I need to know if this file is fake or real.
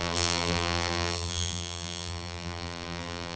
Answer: fake